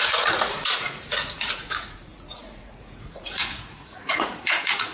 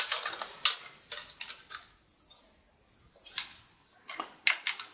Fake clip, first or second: first